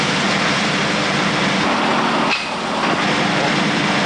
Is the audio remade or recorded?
recorded